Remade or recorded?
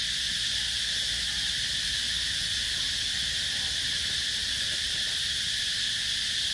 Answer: recorded